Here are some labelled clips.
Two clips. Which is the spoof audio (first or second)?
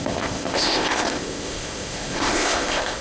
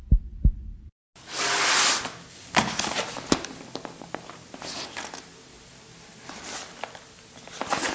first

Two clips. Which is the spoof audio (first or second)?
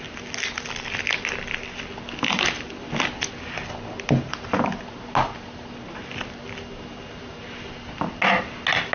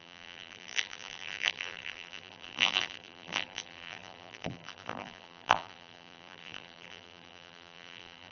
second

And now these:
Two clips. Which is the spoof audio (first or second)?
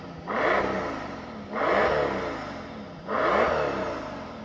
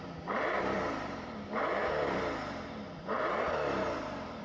second